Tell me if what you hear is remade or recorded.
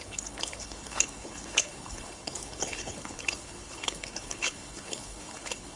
remade